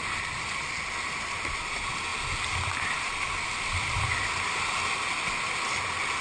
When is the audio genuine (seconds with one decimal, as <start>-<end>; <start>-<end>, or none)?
0.0-6.2